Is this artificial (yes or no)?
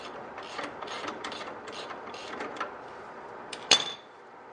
yes